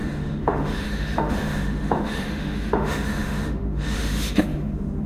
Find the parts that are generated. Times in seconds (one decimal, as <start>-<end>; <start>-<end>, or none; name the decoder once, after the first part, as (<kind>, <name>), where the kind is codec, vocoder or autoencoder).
0.0-5.1 (autoencoder, DAC-VAE)